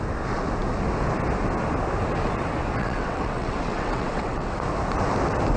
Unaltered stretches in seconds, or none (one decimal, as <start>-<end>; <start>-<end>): 0.0-2.8; 4.5-5.6